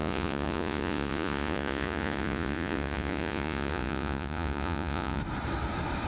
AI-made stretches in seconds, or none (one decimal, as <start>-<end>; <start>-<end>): 0.0-5.2